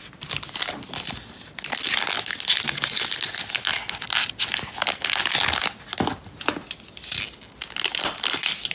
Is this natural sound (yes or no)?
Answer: yes